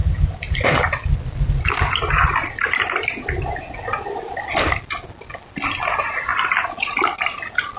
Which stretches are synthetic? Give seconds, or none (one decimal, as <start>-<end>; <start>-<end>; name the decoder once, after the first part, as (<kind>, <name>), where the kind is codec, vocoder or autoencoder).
none

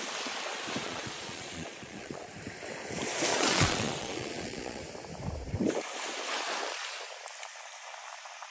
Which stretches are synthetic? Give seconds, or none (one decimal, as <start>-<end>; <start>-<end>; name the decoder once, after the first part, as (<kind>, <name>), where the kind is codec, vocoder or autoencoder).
0.8-2.3 (vocoder, Vocos); 3.3-4.8